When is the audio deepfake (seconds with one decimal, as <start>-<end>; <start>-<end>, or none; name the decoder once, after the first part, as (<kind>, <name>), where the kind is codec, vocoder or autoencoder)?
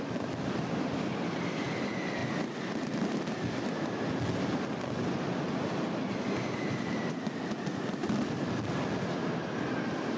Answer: 0.0-2.2 (vocoder, BigVGAN v2); 7.0-8.0